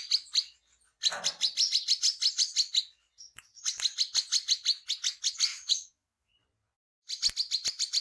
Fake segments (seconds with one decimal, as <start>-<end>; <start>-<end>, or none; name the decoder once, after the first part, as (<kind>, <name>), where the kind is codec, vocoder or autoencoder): 5.5-6.3 (autoencoder, DAC-VAE)